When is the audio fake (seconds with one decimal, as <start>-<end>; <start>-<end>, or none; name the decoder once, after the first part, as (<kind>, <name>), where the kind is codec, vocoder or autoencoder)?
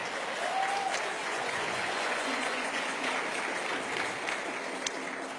1.2-3.1 (vocoder, Vocos)